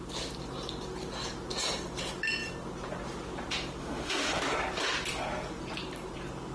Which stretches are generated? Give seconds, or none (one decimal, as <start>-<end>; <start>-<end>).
3.8-4.4